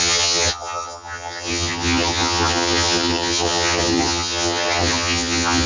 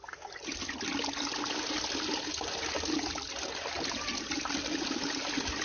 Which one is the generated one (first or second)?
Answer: first